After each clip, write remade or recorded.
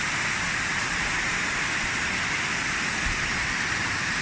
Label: remade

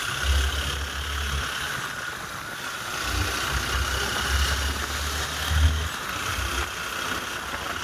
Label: recorded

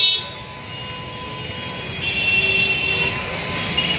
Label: recorded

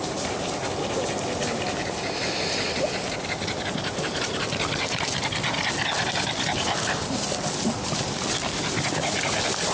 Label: recorded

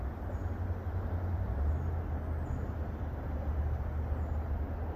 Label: recorded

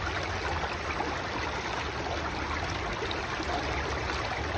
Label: recorded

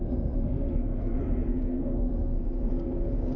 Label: remade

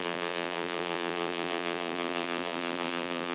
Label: remade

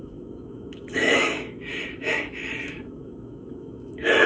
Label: remade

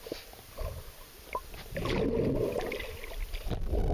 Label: recorded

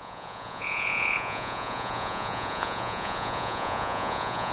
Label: remade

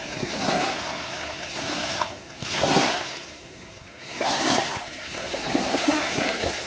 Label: remade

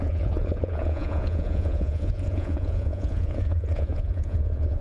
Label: remade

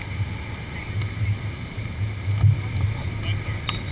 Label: recorded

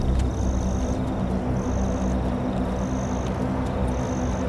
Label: recorded